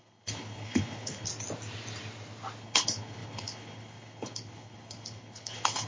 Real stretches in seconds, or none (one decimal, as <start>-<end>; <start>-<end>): 1.3-2.6